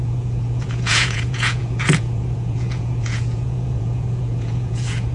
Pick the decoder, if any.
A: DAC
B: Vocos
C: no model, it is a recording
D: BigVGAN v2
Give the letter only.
B